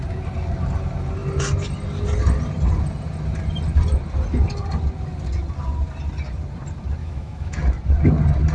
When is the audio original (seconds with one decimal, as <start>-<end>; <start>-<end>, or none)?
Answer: 0.0-7.0; 7.6-8.5